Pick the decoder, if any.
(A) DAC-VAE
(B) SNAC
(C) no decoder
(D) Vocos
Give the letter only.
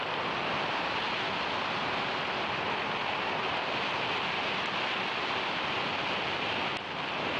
C